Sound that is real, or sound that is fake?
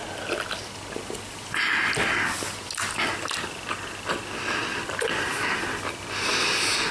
real